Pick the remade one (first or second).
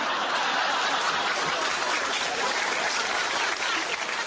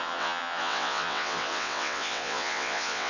second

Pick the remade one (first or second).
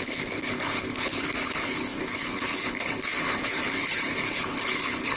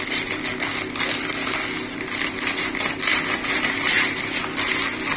first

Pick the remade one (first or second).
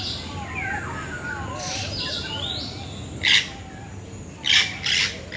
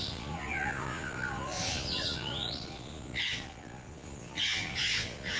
second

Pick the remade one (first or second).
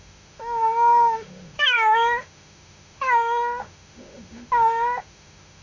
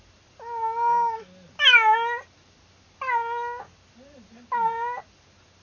first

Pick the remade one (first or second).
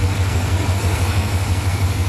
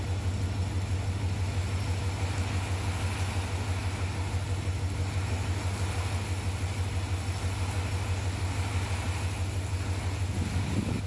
first